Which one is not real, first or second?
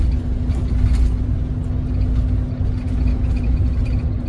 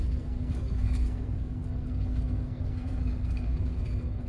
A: second